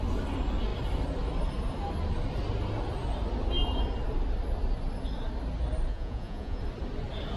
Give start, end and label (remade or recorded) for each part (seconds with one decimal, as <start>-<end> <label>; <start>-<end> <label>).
0.0-5.9 recorded; 5.9-6.6 remade; 6.6-7.4 recorded